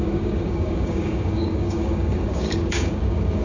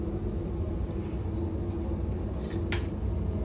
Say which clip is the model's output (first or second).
first